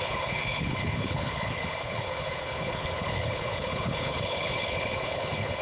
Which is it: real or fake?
fake